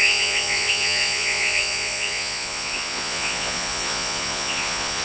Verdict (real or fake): fake